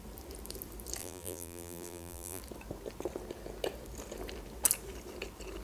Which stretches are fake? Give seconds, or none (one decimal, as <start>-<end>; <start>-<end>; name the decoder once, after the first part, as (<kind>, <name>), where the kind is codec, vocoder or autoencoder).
1.0-2.4 (vocoder, BigVGAN v2)